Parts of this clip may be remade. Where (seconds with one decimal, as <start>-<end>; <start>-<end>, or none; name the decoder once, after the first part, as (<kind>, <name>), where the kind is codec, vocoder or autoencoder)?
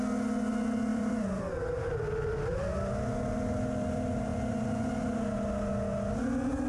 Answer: 0.9-1.5 (vocoder, BigVGAN v2); 4.3-4.8